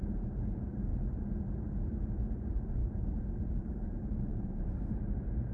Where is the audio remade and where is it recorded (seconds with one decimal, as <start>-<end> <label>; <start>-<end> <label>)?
0.0-0.9 remade; 0.9-2.2 recorded; 2.2-5.5 remade